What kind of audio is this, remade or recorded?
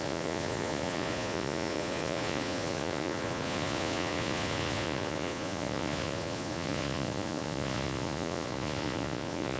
remade